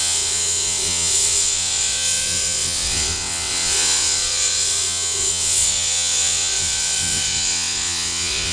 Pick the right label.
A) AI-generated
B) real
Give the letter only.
A